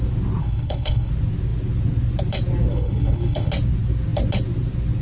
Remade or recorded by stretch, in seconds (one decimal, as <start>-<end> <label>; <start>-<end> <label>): 0.0-0.4 recorded; 0.4-1.1 remade; 1.1-2.7 recorded; 2.7-3.5 remade; 3.5-5.0 recorded